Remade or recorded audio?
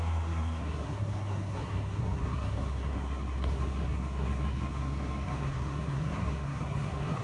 remade